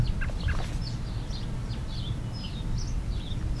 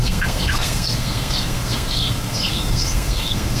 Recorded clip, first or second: first